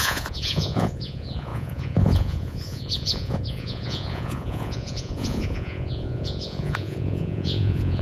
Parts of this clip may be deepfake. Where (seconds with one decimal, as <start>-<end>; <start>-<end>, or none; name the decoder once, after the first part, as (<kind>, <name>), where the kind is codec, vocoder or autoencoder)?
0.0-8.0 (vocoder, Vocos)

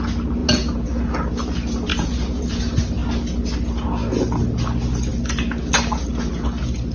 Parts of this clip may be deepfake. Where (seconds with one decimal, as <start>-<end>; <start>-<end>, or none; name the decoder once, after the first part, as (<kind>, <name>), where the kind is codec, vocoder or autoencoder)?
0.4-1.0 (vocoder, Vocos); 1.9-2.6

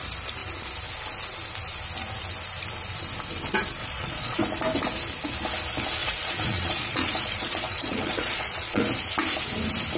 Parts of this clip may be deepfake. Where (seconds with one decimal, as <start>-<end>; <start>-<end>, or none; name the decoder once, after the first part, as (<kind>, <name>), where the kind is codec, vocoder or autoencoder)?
3.8-4.4 (vocoder, Vocos); 6.0-8.8

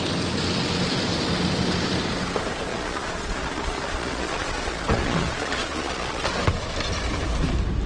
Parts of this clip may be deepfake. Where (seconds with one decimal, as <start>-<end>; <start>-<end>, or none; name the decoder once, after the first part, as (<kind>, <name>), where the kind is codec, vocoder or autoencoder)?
2.7-6.3 (vocoder, Vocos)

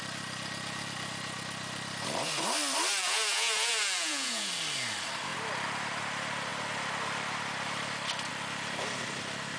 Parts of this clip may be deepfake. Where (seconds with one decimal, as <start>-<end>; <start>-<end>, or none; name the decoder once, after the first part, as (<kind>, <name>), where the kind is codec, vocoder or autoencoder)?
3.0-4.5 (vocoder, Vocos)